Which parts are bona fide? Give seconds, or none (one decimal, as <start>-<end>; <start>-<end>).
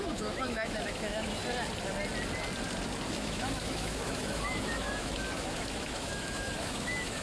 1.4-3.1